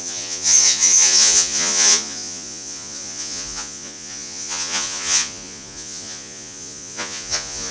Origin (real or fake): fake